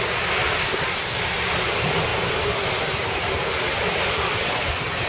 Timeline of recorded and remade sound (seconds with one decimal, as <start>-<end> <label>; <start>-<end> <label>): 0.0-5.1 recorded